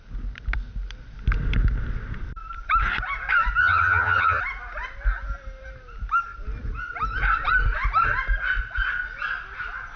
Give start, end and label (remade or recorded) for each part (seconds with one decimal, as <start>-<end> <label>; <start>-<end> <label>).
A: 0.0-3.6 recorded; 3.6-4.4 remade; 4.4-10.0 recorded